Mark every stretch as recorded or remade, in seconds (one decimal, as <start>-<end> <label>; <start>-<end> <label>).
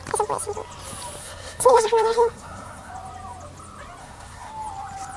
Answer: 0.0-1.2 recorded; 1.2-2.9 remade; 2.9-4.0 recorded; 4.0-4.5 remade; 4.5-5.2 recorded